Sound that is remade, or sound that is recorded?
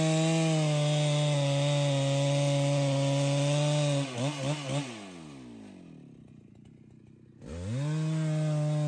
recorded